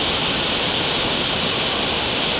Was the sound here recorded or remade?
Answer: recorded